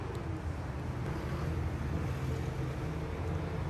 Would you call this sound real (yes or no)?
yes